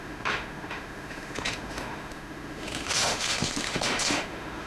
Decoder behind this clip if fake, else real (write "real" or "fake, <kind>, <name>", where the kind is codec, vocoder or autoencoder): fake, autoencoder, DAC-VAE